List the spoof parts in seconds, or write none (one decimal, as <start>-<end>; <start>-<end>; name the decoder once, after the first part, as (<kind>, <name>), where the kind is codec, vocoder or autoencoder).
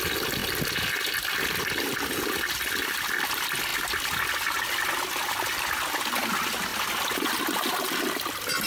none